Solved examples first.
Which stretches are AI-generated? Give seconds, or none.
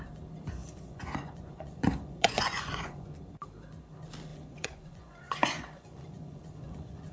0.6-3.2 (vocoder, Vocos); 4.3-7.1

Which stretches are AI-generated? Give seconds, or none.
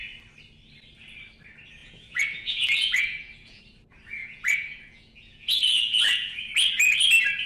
1.8-3.6 (vocoder, Vocos); 4.2-6.4